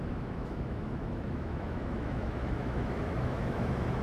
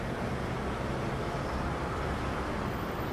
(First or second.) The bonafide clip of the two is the second